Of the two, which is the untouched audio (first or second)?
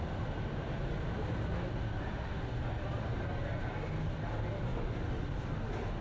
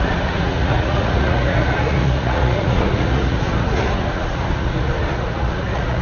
first